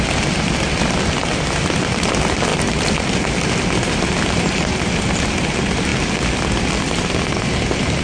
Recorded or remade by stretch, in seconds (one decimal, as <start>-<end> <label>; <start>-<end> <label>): 0.0-8.0 recorded